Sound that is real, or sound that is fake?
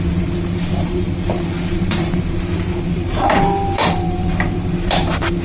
fake